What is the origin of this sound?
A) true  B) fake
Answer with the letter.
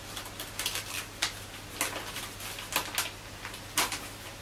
A